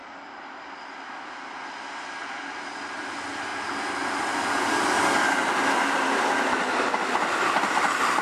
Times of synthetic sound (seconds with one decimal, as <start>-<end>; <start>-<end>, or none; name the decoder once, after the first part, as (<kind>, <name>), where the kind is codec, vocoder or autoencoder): none